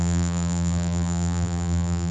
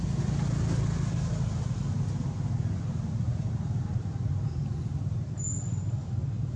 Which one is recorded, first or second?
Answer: second